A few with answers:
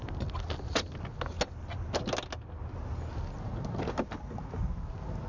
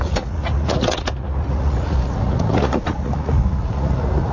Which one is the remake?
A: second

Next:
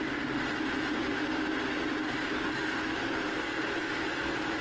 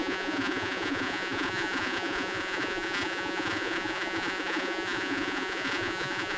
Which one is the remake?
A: second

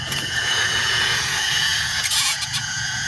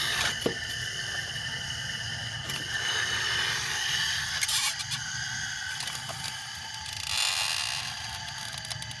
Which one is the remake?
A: first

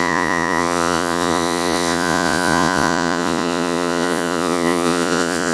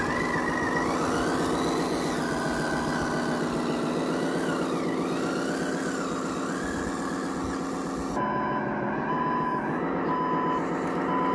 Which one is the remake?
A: first